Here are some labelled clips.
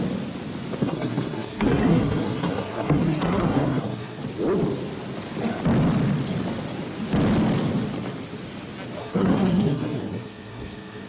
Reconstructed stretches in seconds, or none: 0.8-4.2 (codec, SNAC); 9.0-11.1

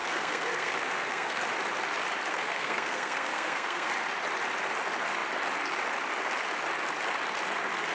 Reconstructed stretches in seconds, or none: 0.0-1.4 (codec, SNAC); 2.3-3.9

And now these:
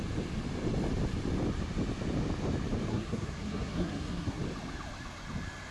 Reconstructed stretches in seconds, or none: 2.9-4.4 (codec, SNAC)

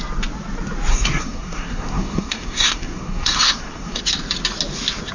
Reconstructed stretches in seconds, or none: 0.9-4.0 (codec, SNAC)